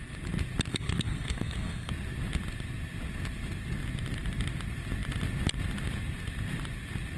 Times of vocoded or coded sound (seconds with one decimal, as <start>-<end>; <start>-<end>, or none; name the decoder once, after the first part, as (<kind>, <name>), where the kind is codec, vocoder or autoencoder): 0.7-1.9 (codec, SNAC)